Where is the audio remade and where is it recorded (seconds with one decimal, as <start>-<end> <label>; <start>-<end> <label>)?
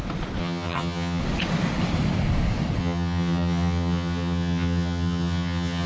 0.0-0.4 recorded; 0.4-1.2 remade; 1.2-2.8 recorded; 2.8-5.9 remade